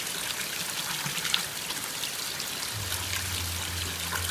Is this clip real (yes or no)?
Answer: yes